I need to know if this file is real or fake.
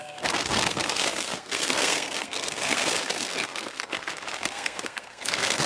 fake